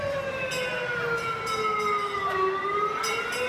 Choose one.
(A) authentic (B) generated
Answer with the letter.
A